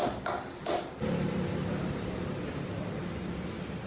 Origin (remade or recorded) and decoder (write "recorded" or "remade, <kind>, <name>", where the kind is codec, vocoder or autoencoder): recorded